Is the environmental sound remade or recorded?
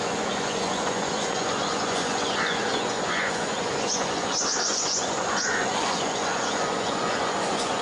remade